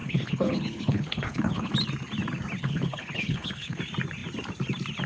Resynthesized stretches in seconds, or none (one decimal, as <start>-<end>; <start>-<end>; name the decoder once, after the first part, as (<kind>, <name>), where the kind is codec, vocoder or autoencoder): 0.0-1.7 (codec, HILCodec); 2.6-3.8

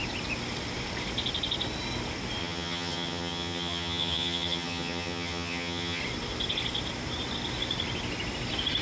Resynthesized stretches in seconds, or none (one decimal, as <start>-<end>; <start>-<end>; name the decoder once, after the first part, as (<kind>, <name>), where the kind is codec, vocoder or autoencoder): 2.4-6.0 (vocoder, HiFi-GAN)

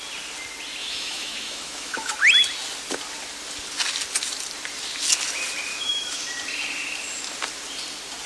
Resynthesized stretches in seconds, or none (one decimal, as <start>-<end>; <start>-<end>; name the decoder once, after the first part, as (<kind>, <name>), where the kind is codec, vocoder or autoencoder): 0.8-2.1 (autoencoder, DAC-VAE); 5.7-6.2

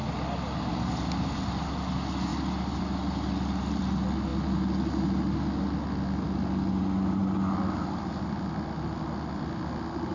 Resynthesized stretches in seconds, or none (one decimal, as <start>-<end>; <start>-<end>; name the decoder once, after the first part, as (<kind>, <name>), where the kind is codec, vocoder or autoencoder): none

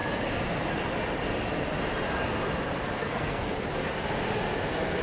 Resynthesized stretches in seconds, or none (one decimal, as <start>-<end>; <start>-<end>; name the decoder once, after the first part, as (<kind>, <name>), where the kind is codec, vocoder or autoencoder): 3.0-3.5 (codec, SNAC)

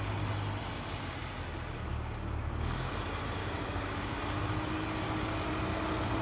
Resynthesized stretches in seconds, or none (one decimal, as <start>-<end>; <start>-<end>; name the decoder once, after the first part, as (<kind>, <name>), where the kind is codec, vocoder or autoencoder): 1.9-2.9 (codec, DAC); 3.4-4.2